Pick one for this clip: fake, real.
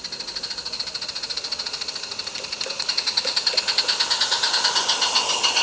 real